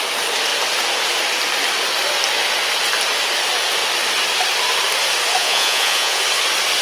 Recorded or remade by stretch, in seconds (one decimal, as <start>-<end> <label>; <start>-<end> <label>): 0.0-5.4 recorded; 5.4-6.2 remade; 6.2-6.8 recorded